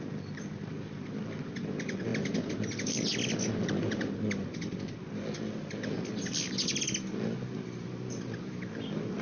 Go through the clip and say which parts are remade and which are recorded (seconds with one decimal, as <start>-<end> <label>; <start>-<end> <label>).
0.0-9.2 recorded